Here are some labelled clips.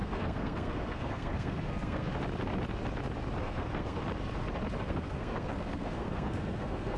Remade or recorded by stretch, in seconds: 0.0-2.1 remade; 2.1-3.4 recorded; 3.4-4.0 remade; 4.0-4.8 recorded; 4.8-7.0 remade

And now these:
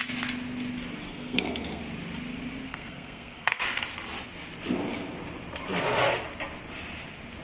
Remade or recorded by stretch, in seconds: 0.0-1.1 recorded; 1.1-1.8 remade; 1.8-2.7 recorded; 2.7-3.6 remade; 3.6-7.4 recorded

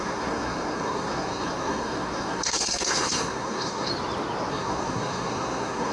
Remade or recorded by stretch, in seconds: 0.0-3.9 remade; 3.9-4.5 recorded; 4.5-5.9 remade

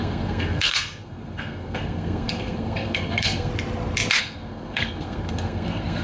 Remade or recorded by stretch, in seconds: 0.0-3.5 remade; 3.5-4.2 recorded; 4.2-6.0 remade